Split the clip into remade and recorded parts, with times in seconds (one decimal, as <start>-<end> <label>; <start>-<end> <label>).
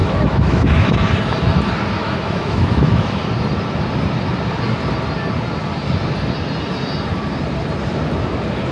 0.0-1.1 remade; 1.1-2.0 recorded; 2.0-3.2 remade; 3.2-8.7 recorded